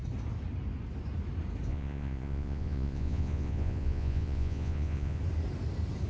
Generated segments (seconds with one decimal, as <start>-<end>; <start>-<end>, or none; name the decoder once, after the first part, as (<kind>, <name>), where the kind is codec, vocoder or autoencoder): 1.7-5.2 (vocoder, Vocos)